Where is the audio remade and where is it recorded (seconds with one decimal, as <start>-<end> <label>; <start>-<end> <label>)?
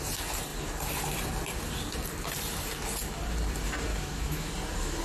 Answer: 0.0-3.9 recorded; 3.9-4.5 remade; 4.5-5.0 recorded